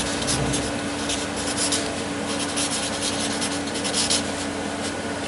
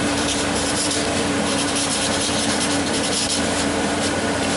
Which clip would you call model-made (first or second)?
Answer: second